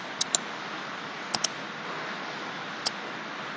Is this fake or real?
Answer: real